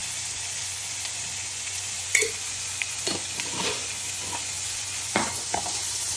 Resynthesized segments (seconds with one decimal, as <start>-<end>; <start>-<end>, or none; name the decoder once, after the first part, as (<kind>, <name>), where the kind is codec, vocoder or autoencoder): 0.0-6.2 (vocoder, Vocos)

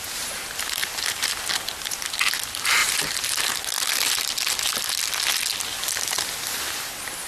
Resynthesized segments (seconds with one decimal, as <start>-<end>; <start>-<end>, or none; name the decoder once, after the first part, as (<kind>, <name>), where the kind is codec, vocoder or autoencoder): none

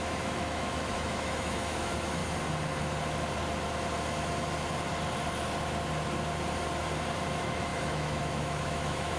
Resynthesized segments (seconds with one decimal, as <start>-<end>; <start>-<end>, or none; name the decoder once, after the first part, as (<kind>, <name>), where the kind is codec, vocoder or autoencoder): 0.0-2.2 (autoencoder, DAC-VAE); 7.3-9.2

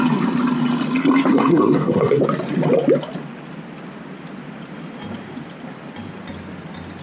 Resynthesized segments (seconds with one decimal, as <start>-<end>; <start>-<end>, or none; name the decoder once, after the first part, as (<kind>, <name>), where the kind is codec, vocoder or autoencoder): 1.3-2.2 (codec, SNAC)

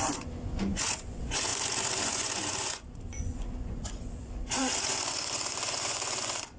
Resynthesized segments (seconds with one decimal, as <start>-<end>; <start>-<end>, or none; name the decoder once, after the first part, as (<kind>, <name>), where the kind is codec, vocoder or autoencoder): 0.0-6.6 (vocoder, Vocos)

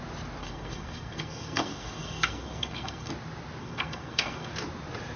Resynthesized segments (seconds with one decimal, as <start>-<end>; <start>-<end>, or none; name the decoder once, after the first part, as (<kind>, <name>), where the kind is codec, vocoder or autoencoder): 0.4-3.1 (codec, SNAC); 3.6-4.5